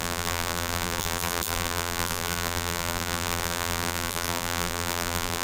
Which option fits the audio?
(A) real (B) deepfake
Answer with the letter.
B